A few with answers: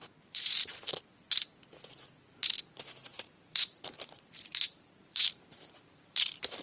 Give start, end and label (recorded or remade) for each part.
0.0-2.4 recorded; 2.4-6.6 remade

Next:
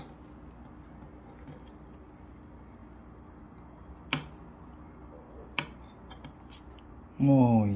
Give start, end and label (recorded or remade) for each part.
0.0-7.8 recorded

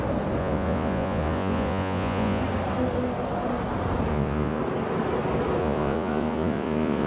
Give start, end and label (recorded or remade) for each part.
0.0-0.4 recorded; 0.4-2.4 remade; 2.4-4.1 recorded; 4.1-4.6 remade; 4.6-5.6 recorded; 5.6-7.1 remade

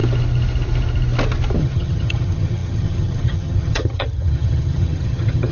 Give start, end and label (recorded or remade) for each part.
0.0-1.6 recorded; 1.6-5.5 remade

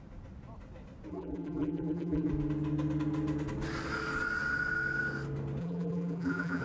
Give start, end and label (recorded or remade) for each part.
0.0-1.1 recorded; 1.1-2.3 remade; 2.3-5.6 recorded; 5.6-6.6 remade

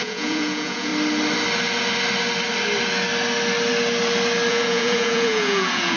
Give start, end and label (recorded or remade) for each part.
0.0-0.9 remade; 0.9-4.5 recorded; 4.5-6.0 remade

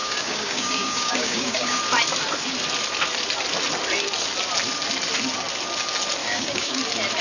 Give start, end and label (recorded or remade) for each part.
0.0-1.8 remade; 1.8-6.2 recorded; 6.2-6.8 remade; 6.8-7.2 recorded

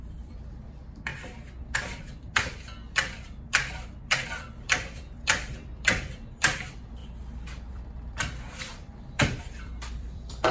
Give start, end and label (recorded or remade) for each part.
0.0-1.1 remade; 1.1-1.6 recorded; 1.6-7.0 remade; 7.0-7.7 recorded; 7.7-10.5 remade